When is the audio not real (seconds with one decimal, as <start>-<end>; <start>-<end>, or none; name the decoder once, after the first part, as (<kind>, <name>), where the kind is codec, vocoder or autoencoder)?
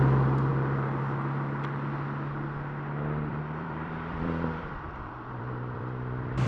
3.3-6.5 (vocoder, BigVGAN v2)